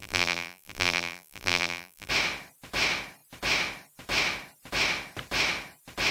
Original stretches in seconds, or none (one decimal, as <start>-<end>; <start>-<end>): 2.1-6.1

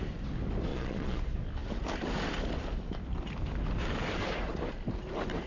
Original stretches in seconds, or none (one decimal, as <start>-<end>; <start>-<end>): 0.0-0.7; 1.2-5.5

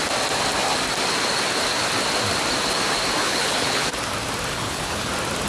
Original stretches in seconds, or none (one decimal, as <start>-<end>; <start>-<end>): 0.0-3.2; 3.9-4.5; 5.1-5.5

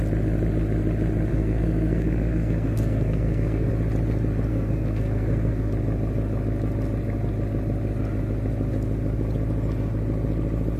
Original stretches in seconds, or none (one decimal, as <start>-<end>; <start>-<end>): 0.0-1.3; 3.7-4.5; 5.7-10.8